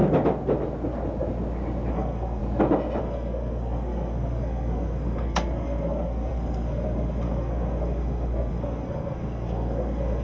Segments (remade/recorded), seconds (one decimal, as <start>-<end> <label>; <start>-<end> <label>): 0.0-1.9 recorded; 1.9-2.4 remade; 2.4-3.0 recorded; 3.0-10.2 remade